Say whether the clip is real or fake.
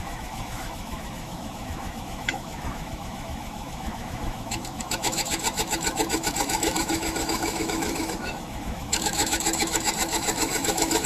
fake